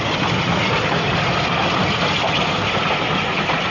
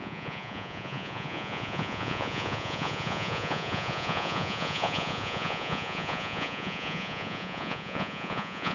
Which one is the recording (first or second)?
first